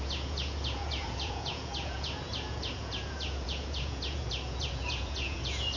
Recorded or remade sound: remade